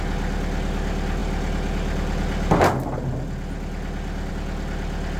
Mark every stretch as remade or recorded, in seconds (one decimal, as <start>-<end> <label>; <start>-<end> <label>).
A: 0.0-5.2 recorded